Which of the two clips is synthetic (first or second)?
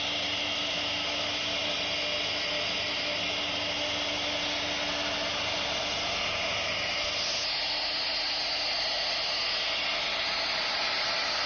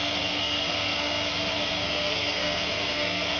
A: second